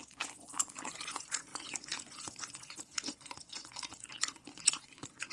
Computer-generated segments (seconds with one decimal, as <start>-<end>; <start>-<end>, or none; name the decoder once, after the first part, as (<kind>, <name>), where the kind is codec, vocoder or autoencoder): 0.0-5.3 (vocoder, Vocos)